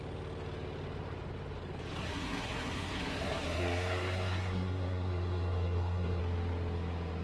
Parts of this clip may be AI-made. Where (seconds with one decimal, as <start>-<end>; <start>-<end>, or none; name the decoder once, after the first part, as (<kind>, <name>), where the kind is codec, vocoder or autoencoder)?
2.0-6.2 (codec, SNAC)